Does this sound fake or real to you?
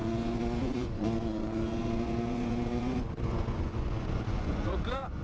fake